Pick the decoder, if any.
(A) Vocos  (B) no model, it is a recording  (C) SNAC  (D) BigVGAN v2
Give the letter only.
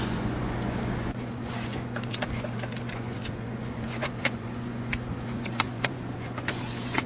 A